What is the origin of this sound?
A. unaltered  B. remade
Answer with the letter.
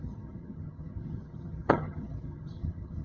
B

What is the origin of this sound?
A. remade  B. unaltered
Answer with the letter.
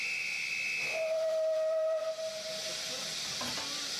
B